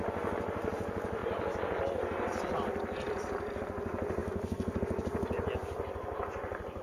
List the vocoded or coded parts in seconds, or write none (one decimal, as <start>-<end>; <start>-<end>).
1.2-3.6